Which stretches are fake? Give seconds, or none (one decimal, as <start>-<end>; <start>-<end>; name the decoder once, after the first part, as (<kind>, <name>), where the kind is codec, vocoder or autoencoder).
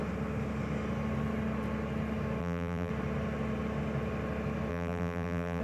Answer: 2.4-2.9 (vocoder, BigVGAN v2); 4.7-5.6